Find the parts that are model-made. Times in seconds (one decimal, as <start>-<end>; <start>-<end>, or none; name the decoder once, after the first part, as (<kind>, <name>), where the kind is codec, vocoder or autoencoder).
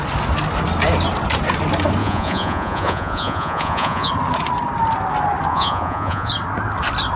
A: 2.0-4.1 (vocoder, Vocos); 5.5-6.3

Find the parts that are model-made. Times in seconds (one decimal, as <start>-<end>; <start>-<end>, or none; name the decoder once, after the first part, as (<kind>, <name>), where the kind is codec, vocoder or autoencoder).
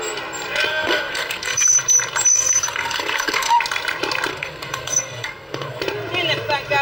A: 0.7-1.8 (codec, SNAC); 2.3-3.6; 4.3-5.8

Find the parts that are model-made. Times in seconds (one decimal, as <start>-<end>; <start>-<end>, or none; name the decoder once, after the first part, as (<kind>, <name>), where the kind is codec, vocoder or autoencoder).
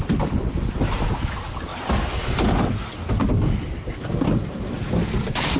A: none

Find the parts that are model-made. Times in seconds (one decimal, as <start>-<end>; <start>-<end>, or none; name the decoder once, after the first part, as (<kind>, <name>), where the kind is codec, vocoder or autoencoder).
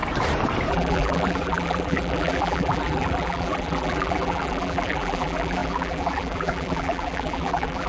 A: 0.7-7.9 (vocoder, BigVGAN v2)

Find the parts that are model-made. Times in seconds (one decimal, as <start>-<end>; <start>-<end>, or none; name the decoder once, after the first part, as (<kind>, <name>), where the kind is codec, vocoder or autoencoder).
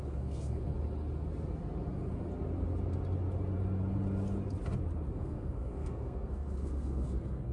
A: 0.0-0.7 (codec, SNAC); 5.1-7.5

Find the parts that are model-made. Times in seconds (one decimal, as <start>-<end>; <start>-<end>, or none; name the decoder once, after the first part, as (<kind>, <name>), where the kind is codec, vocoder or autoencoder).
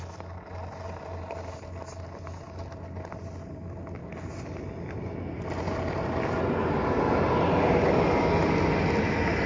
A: none